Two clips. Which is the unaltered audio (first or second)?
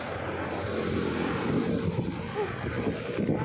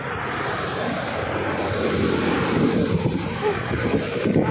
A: first